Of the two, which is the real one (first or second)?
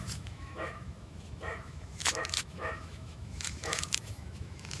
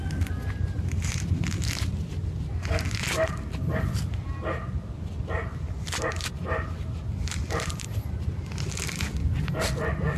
second